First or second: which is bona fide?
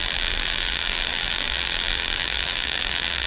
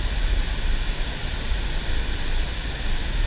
second